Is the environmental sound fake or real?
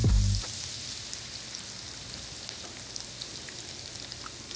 real